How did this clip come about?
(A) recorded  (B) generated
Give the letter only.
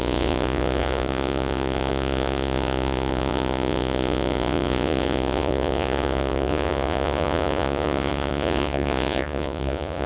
B